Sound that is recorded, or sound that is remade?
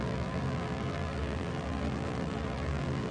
remade